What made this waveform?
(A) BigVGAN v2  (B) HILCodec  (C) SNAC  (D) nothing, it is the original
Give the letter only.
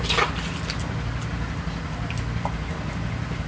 D